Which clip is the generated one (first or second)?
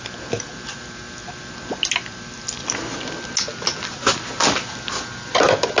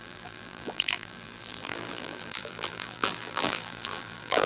second